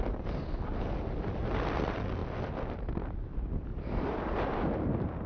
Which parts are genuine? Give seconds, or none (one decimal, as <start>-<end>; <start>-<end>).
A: 3.7-4.7